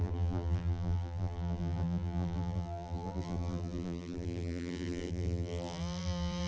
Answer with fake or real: fake